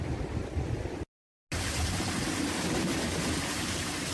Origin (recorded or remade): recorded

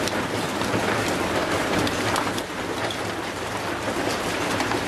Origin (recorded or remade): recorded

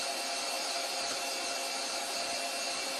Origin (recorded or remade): recorded